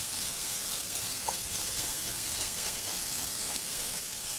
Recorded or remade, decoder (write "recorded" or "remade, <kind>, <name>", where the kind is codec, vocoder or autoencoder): remade, codec, SNAC